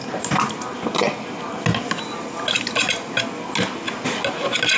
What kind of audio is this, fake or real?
real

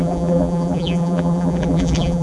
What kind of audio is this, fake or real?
fake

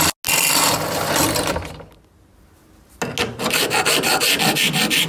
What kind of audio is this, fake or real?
real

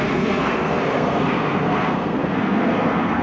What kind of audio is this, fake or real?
fake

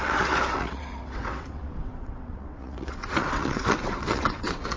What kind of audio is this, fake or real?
fake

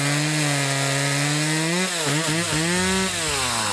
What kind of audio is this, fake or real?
real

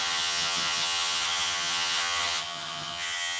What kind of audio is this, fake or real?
fake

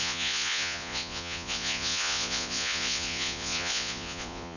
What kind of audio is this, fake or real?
fake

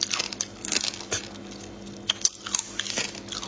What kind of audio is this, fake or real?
real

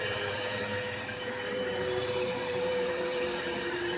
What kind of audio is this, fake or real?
fake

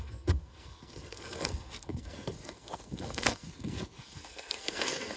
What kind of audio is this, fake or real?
fake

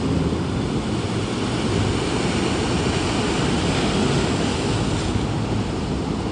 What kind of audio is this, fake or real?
real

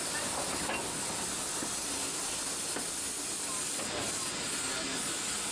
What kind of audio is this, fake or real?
real